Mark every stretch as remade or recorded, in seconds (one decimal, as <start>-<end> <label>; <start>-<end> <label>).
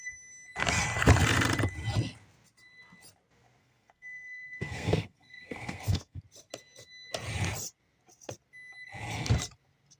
0.0-3.6 recorded; 3.6-6.2 remade; 6.2-10.0 recorded